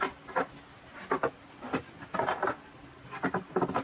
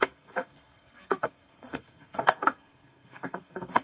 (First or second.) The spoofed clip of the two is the second